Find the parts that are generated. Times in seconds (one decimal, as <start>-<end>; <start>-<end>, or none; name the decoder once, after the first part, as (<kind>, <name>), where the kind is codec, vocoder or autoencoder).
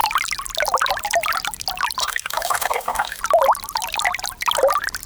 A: 2.0-3.2 (codec, DAC)